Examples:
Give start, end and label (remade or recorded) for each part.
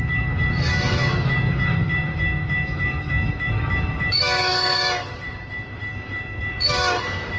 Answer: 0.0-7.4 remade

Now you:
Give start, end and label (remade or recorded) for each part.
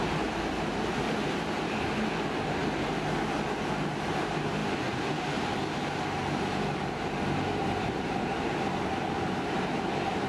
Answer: 0.0-2.6 remade; 2.6-3.7 recorded; 3.7-4.6 remade; 4.6-7.8 recorded; 7.8-10.3 remade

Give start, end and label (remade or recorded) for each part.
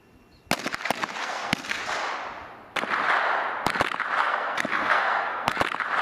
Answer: 0.0-1.2 recorded; 1.2-1.8 remade; 1.8-4.2 recorded; 4.2-5.6 remade; 5.6-6.0 recorded